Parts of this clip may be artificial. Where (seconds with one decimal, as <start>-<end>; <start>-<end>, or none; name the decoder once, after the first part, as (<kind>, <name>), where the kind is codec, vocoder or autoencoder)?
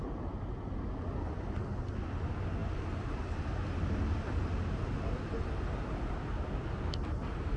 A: none